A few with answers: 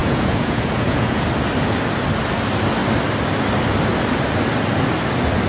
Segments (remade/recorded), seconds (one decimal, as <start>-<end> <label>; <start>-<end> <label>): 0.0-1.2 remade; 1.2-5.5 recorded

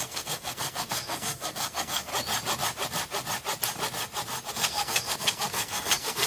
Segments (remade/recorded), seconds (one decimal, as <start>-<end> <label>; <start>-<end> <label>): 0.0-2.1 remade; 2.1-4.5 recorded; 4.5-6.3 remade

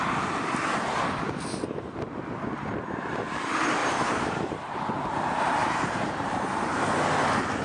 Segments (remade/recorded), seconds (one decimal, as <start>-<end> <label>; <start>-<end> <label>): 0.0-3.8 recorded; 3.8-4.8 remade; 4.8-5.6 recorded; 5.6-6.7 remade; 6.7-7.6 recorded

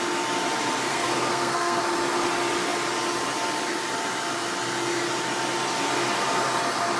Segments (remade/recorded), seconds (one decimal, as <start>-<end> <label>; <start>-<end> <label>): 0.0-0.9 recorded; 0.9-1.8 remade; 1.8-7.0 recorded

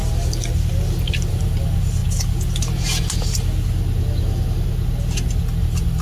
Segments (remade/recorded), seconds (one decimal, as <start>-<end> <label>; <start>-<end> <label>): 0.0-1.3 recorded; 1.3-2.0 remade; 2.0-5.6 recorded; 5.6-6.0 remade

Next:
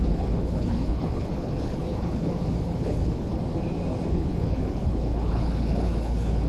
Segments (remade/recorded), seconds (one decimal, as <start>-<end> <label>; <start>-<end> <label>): 0.0-3.4 remade; 3.4-4.1 recorded; 4.1-6.5 remade

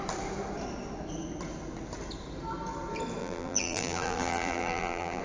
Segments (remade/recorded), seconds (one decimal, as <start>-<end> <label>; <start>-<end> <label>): 0.0-3.2 recorded; 3.2-5.2 remade

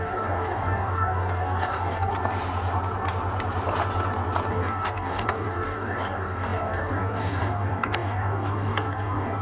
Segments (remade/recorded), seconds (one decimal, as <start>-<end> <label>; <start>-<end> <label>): 0.0-2.1 remade; 2.1-4.5 recorded; 4.5-9.4 remade